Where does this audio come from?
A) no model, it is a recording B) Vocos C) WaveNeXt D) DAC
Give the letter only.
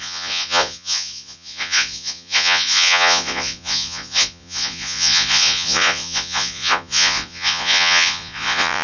B